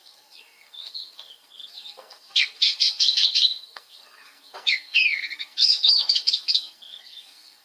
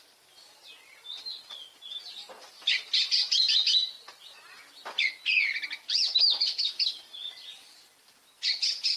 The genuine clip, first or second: second